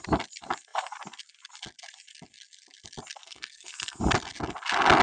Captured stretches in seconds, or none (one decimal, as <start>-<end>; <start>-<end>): 0.0-3.2; 4.0-5.0